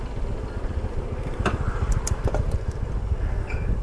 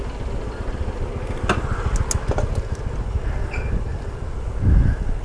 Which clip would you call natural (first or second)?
second